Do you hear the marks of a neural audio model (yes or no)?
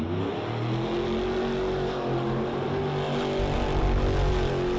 no